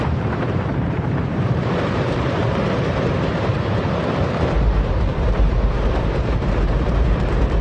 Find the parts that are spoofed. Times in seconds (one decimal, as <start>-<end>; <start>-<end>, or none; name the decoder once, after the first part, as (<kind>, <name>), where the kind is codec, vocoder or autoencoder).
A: 0.0-7.6 (vocoder, BigVGAN v2)